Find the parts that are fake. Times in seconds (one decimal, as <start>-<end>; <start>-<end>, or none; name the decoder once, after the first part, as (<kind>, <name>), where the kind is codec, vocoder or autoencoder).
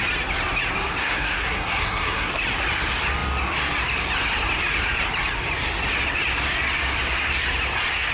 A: 1.0-2.3 (codec, SNAC)